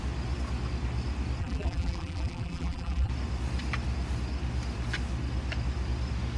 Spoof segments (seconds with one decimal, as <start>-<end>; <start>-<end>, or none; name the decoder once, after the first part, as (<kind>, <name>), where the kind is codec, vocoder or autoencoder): 1.4-3.1 (vocoder, BigVGAN v2)

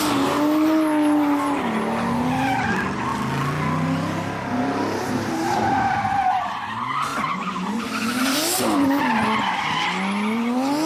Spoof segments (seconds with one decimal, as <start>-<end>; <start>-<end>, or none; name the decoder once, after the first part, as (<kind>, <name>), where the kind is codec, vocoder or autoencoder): none

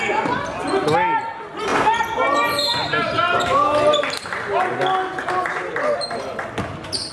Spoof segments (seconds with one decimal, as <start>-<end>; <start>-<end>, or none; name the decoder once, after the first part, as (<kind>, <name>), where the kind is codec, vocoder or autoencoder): none